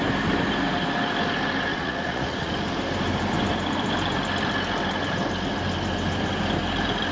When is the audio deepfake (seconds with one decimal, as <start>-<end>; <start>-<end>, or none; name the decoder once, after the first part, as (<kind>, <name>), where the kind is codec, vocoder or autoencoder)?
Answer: 1.7-2.5 (vocoder, Vocos)